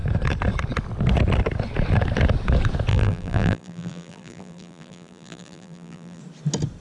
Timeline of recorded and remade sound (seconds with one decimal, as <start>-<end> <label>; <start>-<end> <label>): 0.0-2.9 recorded; 2.9-6.2 remade; 6.2-6.8 recorded